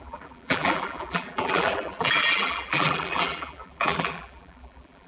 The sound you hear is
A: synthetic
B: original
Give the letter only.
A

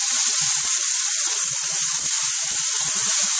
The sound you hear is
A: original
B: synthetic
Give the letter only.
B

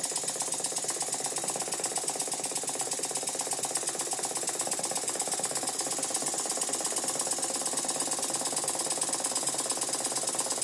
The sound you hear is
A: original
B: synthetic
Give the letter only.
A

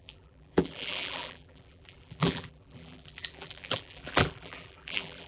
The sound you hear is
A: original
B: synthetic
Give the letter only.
B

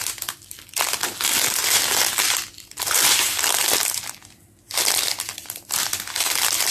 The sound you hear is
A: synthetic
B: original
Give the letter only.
B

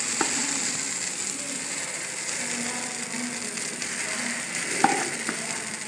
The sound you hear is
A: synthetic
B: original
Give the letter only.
B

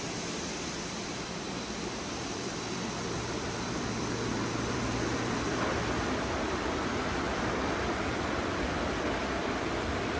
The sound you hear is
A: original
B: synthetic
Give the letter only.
B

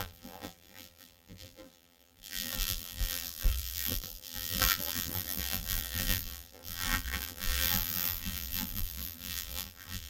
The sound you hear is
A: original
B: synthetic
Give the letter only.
B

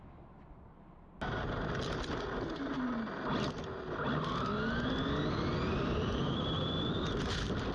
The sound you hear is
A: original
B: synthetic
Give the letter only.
A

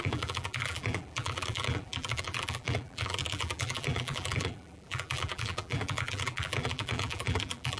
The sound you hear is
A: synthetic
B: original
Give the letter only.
A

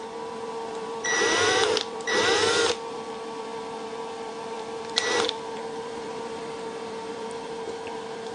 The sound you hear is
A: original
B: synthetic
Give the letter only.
B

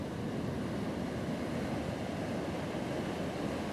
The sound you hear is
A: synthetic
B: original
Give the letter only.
B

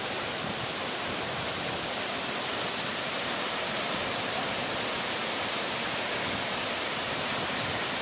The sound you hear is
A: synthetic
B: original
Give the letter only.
A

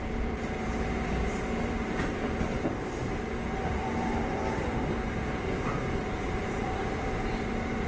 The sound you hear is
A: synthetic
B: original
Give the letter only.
A